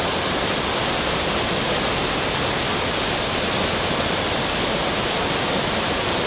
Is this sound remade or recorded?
recorded